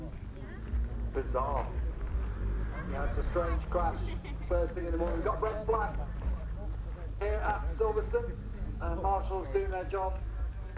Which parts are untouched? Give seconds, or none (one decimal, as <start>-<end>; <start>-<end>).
0.0-4.8; 6.0-8.5; 10.2-10.8